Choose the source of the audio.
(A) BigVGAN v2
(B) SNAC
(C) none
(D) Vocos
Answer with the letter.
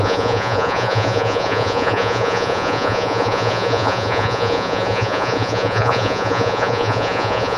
D